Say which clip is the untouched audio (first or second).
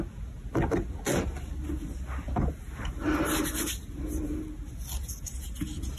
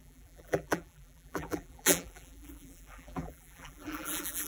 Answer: first